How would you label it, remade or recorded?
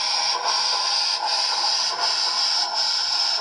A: recorded